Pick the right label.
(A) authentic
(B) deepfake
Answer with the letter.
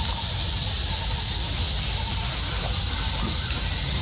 A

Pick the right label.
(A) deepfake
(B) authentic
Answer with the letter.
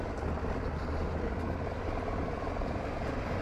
B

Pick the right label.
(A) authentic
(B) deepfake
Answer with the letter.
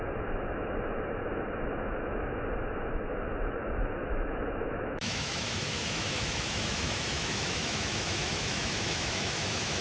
B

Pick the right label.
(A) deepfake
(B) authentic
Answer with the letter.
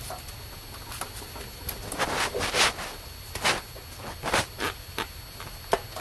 B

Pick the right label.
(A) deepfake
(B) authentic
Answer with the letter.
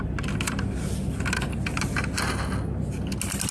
B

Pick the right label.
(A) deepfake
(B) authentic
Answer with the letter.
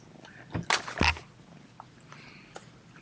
B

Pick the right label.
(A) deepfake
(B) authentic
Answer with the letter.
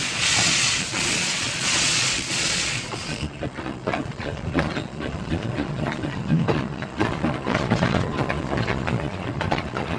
A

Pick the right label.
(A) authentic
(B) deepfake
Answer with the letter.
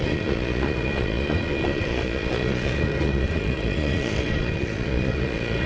B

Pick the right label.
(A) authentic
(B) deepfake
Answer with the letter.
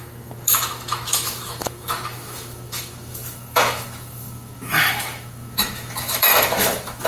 B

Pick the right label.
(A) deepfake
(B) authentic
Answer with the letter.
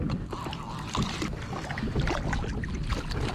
B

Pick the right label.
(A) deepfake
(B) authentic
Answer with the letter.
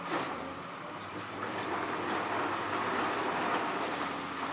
A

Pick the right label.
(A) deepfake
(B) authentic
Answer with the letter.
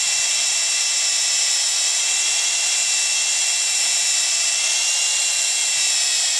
B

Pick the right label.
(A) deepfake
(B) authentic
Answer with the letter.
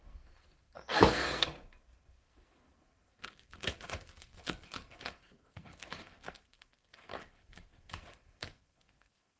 A